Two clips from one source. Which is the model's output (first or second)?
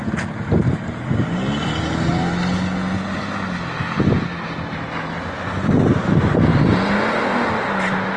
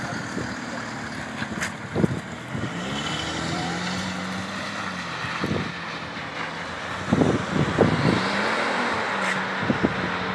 second